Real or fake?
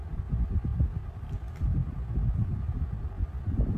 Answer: real